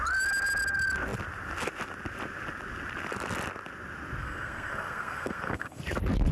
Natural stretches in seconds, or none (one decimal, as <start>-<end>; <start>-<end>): 0.0-4.2; 5.8-6.3